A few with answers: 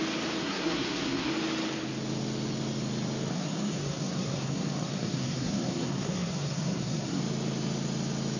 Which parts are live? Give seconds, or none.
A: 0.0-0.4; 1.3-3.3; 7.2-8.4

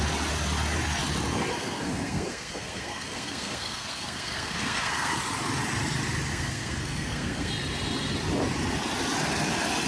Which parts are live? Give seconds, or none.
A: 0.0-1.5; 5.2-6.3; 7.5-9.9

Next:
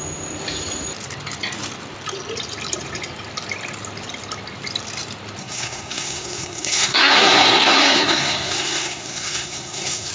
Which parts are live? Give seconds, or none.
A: 0.0-5.4

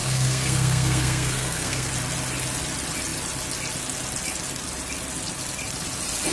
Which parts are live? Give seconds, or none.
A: 1.9-6.3

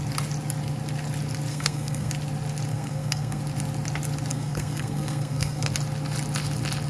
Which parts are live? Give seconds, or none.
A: 0.0-1.5; 2.1-2.7; 3.4-4.3; 5.7-6.9